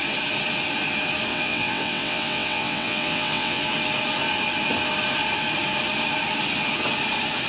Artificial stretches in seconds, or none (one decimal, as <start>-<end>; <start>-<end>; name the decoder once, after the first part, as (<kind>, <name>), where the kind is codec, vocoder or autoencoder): 1.3-3.6 (vocoder, WaveNeXt)